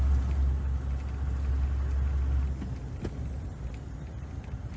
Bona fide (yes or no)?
yes